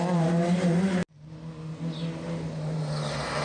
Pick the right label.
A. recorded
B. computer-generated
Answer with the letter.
A